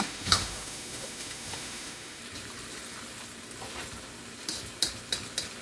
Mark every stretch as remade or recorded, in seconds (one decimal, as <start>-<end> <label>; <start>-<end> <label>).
0.0-2.2 remade; 2.2-5.6 recorded